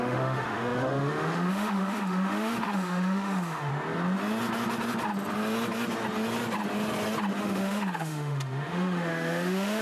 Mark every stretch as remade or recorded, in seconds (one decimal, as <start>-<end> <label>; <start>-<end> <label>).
0.0-3.7 remade; 3.7-7.4 recorded; 7.4-9.8 remade